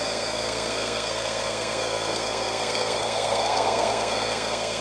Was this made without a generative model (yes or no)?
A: no